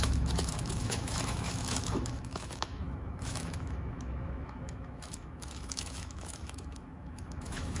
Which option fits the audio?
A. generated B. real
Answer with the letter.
A